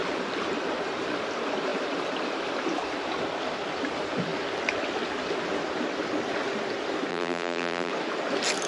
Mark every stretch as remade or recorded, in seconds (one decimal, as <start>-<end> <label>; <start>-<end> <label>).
0.0-7.1 recorded; 7.1-7.9 remade; 7.9-8.7 recorded